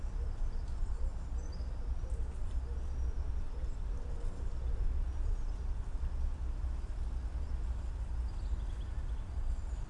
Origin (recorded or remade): recorded